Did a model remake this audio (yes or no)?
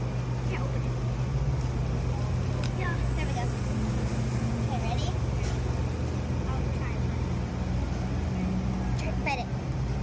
no